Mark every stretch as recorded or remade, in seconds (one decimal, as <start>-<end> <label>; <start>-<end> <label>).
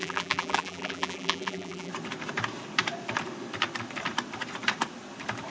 0.0-1.9 remade; 1.9-5.5 recorded